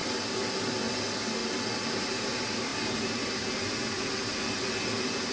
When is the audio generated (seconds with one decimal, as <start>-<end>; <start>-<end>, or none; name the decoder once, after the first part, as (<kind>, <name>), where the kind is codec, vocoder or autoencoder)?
none